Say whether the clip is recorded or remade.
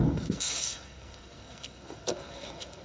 remade